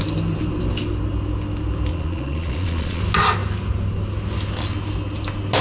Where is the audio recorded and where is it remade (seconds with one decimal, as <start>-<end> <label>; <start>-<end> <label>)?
0.0-1.9 recorded; 1.9-3.0 remade; 3.0-5.6 recorded